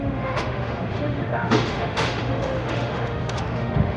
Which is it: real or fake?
fake